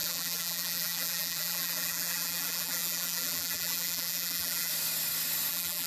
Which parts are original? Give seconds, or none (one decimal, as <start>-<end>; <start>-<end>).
4.7-5.5